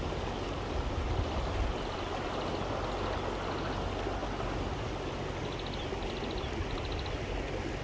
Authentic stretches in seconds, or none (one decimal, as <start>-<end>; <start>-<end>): 0.0-7.8